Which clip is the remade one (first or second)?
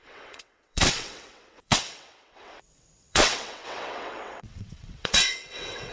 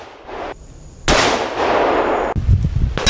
first